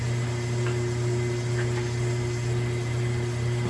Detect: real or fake real